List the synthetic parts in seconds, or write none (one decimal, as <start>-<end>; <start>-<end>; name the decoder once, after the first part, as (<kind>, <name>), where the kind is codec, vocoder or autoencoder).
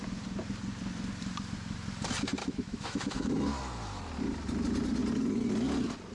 2.4-3.3 (autoencoder, DAC-VAE)